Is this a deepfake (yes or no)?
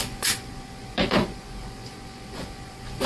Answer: yes